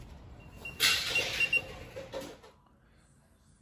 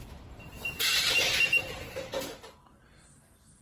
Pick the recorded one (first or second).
first